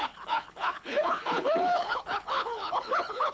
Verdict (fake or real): fake